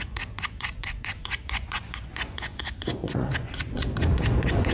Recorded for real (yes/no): no